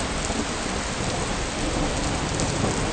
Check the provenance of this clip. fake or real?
real